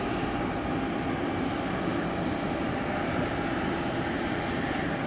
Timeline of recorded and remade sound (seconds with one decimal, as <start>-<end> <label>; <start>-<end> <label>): 0.0-5.1 recorded